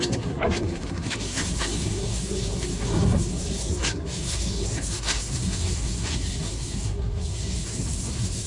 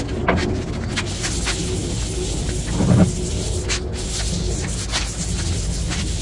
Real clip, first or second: second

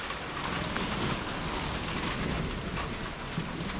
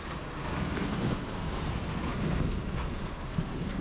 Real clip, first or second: first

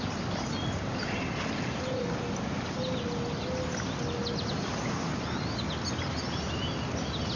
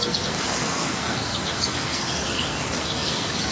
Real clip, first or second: first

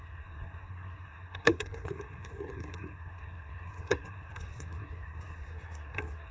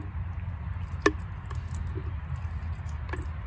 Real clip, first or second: second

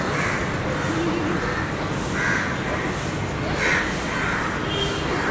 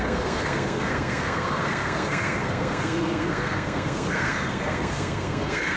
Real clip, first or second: first